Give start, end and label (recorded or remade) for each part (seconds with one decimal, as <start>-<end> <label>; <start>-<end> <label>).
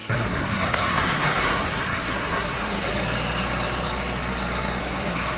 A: 0.0-2.9 remade; 2.9-4.8 recorded; 4.8-5.4 remade